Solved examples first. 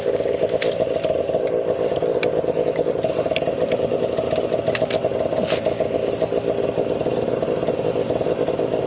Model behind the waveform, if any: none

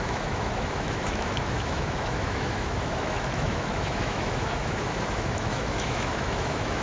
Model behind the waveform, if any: autoencoder, DAC-VAE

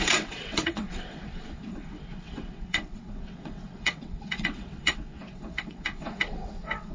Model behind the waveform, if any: vocoder, WaveNeXt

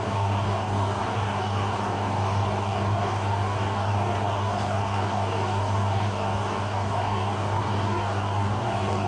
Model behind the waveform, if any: codec, DAC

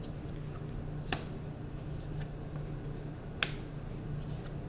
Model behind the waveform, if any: none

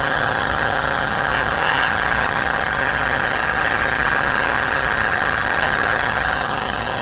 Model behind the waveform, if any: vocoder, HiFi-GAN